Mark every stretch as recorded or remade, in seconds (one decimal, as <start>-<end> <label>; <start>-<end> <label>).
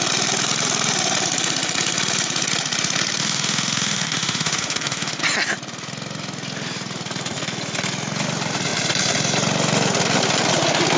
0.0-3.2 recorded; 3.2-5.2 remade; 5.2-11.0 recorded